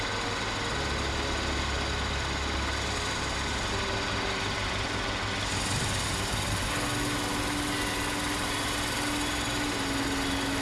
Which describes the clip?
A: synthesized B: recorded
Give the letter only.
B